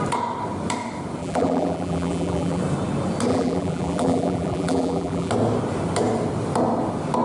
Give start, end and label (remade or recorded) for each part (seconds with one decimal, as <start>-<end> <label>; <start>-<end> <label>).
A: 0.0-1.2 recorded; 1.2-2.6 remade; 2.6-3.3 recorded; 3.3-5.3 remade; 5.3-7.2 recorded